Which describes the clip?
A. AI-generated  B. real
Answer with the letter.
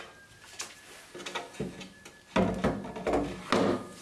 B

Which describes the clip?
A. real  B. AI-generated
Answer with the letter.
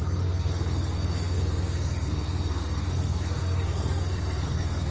B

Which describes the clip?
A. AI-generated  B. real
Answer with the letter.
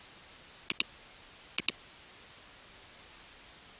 B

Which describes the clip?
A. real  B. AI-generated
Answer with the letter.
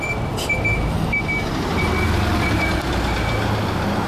A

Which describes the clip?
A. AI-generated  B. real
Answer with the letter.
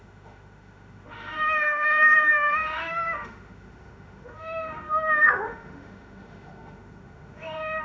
A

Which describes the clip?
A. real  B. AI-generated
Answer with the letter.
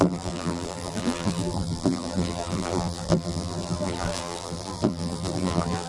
B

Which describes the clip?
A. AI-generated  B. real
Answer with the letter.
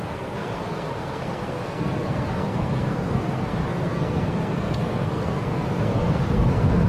A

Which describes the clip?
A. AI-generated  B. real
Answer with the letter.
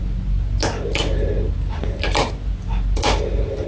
B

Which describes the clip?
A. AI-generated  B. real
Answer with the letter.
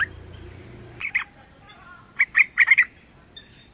A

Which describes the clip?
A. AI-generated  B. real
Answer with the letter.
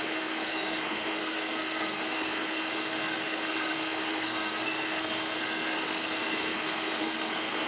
A